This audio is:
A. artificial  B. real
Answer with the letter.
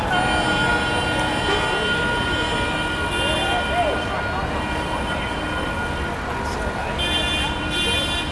B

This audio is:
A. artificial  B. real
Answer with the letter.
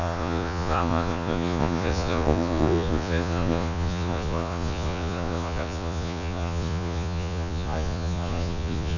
A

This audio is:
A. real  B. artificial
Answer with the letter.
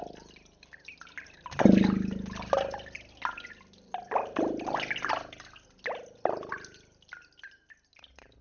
A